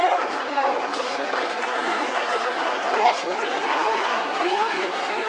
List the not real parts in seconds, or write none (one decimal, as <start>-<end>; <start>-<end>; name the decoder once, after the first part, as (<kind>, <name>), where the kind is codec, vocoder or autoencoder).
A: 0.0-5.3 (codec, SNAC)